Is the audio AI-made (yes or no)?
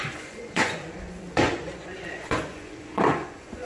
yes